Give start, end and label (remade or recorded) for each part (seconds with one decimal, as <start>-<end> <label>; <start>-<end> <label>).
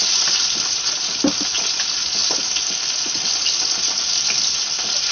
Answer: 0.0-5.1 recorded